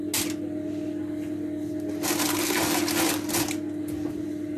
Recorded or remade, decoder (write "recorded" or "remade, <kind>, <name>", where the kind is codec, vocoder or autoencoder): recorded